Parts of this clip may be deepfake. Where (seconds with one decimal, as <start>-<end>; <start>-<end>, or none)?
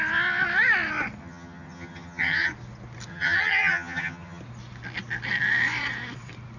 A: 1.2-2.5; 3.1-4.4